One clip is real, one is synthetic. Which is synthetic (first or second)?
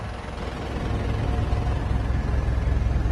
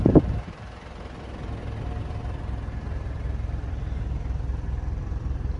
second